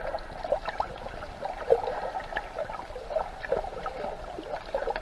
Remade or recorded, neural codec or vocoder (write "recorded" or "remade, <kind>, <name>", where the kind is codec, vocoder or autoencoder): recorded